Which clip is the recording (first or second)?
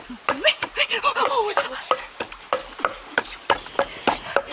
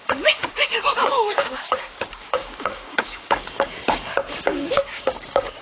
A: first